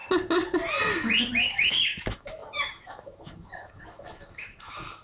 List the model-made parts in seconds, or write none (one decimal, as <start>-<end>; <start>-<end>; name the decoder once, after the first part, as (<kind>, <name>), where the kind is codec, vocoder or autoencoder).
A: 1.2-5.0 (autoencoder, DAC-VAE)